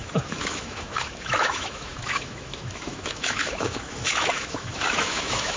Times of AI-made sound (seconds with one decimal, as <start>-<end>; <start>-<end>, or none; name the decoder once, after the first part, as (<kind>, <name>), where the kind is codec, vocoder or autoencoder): 0.0-5.6 (autoencoder, DAC-VAE)